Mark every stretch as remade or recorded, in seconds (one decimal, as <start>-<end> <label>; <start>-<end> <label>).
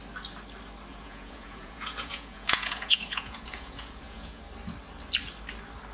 0.0-0.9 recorded; 0.9-4.4 remade; 4.4-5.9 recorded